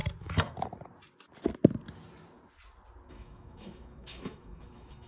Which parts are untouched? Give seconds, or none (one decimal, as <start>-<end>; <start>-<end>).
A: 0.0-3.1